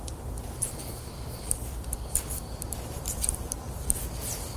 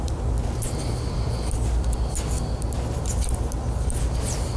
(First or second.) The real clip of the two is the second